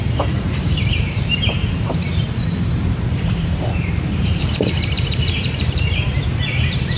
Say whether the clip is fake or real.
fake